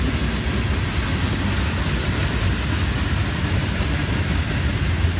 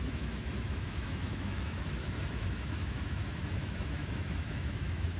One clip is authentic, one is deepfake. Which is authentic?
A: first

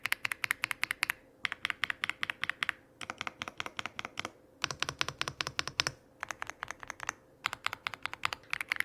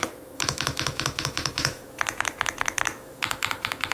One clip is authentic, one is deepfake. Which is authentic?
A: first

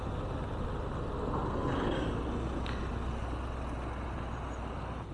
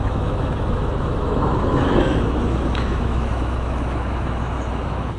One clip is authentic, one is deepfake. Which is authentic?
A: first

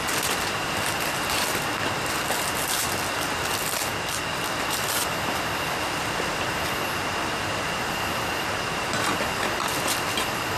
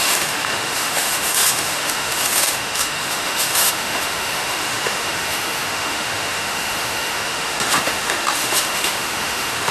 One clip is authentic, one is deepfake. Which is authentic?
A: first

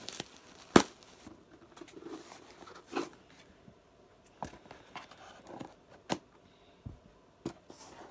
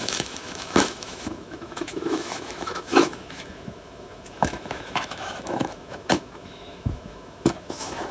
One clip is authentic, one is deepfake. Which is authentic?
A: first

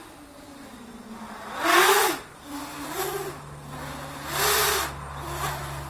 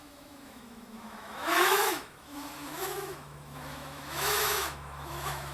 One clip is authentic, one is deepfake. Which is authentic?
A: first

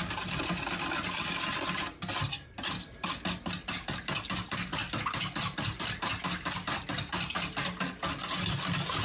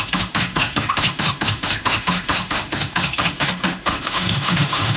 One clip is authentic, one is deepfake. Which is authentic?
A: first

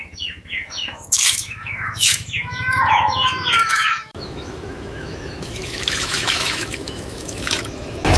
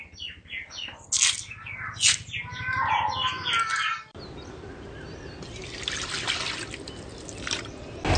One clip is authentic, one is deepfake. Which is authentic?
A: second